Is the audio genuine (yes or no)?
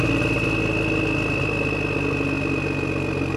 yes